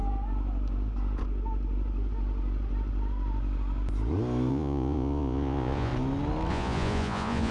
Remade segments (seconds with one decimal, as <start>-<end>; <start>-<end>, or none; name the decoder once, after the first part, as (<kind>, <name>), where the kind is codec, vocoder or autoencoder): 4.5-5.9 (vocoder, Vocos); 6.5-7.5